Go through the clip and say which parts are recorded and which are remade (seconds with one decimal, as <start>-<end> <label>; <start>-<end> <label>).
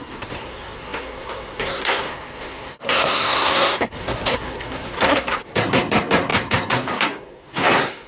0.0-8.1 remade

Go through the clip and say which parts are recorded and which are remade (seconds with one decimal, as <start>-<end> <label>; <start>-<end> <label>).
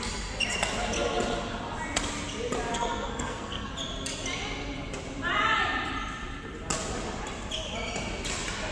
0.0-2.7 recorded; 2.7-3.7 remade; 3.7-8.7 recorded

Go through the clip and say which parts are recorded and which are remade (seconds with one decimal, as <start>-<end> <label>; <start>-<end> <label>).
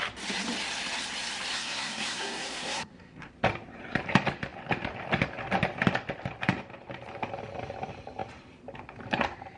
0.0-1.5 recorded; 1.5-3.3 remade; 3.3-9.6 recorded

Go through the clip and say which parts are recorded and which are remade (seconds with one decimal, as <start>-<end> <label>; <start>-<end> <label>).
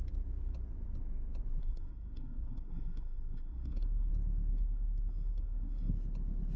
0.0-1.6 recorded; 1.6-4.1 remade; 4.1-4.5 recorded; 4.5-5.9 remade; 5.9-6.6 recorded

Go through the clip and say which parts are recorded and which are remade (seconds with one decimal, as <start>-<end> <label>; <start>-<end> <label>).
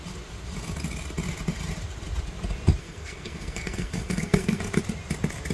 0.0-2.8 recorded; 2.8-4.6 remade; 4.6-5.5 recorded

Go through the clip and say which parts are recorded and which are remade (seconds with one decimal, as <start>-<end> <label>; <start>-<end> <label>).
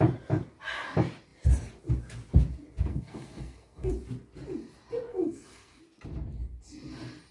0.0-2.9 recorded; 2.9-3.9 remade; 3.9-5.1 recorded; 5.1-5.8 remade; 5.8-7.3 recorded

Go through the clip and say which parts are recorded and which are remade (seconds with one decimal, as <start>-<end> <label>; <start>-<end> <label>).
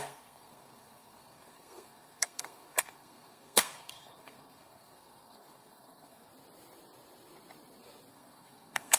0.0-6.3 remade; 6.3-8.1 recorded; 8.1-9.0 remade